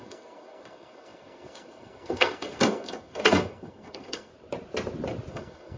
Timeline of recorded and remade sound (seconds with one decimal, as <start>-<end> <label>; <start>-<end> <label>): 0.0-4.3 remade; 4.3-5.3 recorded; 5.3-5.8 remade